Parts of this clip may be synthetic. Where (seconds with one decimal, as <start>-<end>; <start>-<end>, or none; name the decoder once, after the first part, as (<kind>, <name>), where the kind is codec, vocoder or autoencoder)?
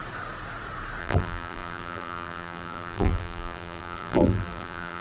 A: 1.0-5.0 (vocoder, BigVGAN v2)